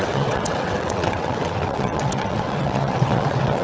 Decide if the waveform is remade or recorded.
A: remade